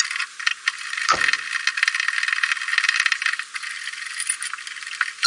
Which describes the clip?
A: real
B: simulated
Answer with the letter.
A